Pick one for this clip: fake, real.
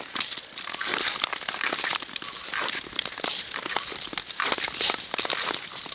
real